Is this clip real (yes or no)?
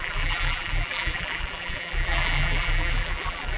no